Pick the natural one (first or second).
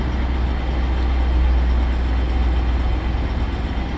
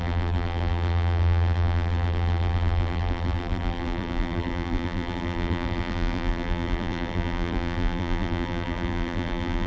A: first